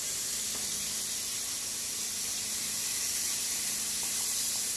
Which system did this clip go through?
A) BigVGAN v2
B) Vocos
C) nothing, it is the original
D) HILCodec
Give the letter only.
A